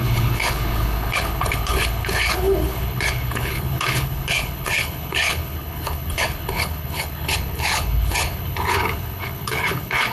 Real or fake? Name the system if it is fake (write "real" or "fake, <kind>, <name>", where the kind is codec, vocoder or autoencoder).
fake, codec, HILCodec